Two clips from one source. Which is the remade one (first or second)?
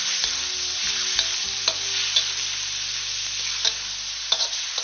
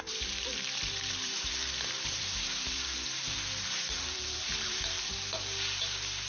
second